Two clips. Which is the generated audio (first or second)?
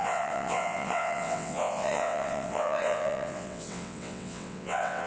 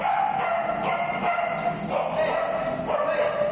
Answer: first